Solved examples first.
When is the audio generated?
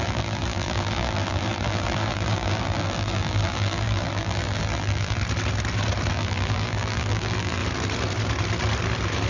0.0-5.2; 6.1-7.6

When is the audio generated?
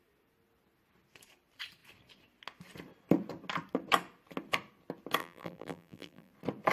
5.2-6.3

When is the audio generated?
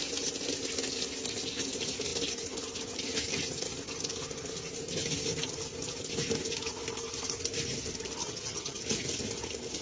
8.2-8.8